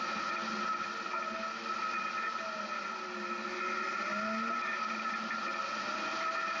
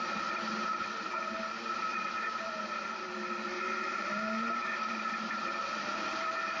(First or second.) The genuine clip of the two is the first